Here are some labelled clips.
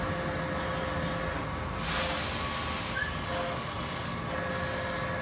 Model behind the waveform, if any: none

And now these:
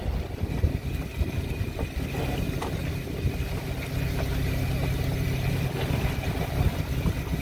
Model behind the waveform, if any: none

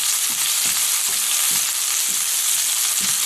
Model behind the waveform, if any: none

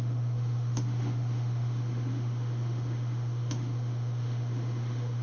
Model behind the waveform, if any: autoencoder, DAC-VAE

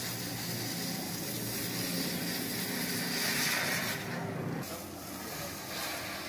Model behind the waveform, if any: none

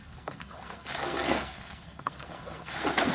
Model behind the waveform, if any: codec, SNAC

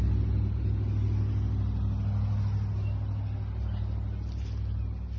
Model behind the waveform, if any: none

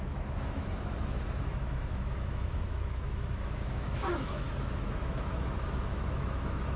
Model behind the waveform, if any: autoencoder, DAC-VAE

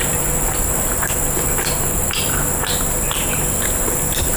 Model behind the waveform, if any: none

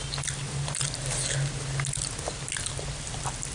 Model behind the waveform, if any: none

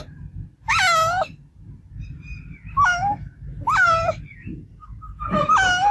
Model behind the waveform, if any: none